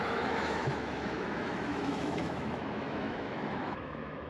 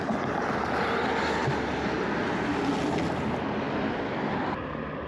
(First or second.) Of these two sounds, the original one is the second